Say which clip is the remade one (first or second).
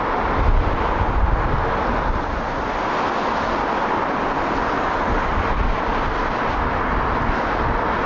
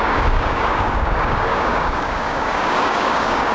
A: second